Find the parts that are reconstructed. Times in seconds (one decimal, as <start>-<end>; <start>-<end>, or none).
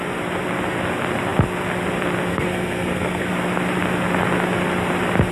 2.3-3.3